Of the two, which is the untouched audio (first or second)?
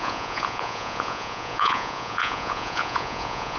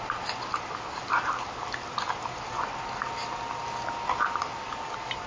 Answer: second